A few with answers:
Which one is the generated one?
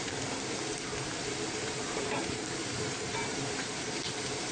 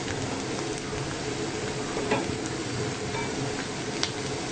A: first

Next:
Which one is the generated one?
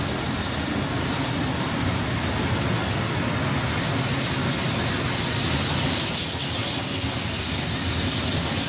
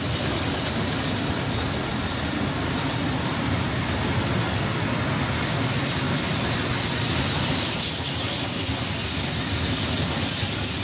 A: second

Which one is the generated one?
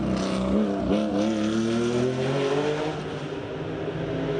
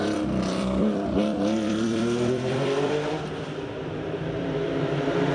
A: second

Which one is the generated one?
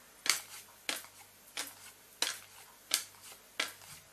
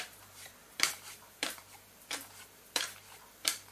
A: second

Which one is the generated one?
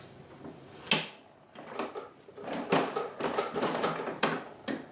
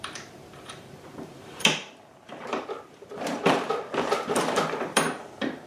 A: second